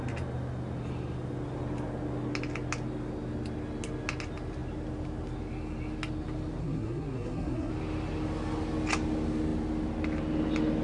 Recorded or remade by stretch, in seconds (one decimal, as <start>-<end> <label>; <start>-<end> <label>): 0.0-6.6 recorded; 6.6-7.7 remade; 7.7-10.8 recorded